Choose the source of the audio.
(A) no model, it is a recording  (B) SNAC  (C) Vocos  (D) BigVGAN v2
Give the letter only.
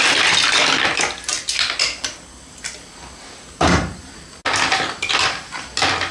A